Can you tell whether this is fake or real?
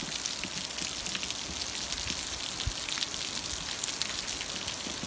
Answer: real